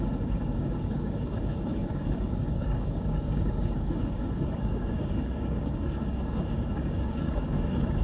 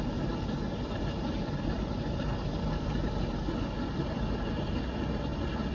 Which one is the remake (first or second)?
first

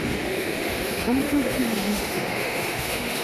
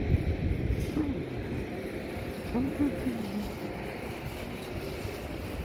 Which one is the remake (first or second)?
first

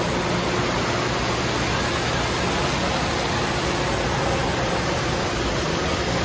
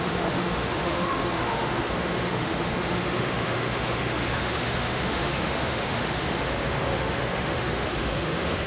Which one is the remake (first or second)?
second